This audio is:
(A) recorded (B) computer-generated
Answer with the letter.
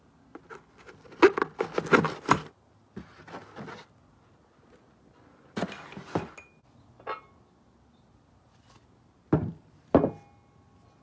A